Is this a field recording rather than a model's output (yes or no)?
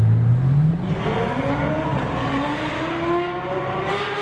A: yes